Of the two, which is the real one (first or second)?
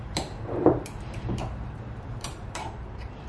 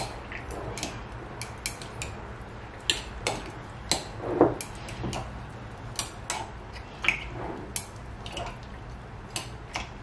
second